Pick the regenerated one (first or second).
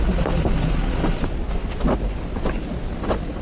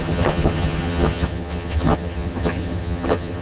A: second